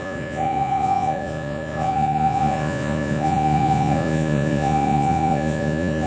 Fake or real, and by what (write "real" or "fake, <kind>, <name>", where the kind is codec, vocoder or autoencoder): fake, vocoder, Vocos